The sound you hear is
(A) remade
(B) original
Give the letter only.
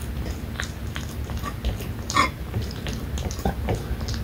B